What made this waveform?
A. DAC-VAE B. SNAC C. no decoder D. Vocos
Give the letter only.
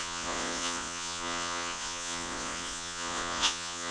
D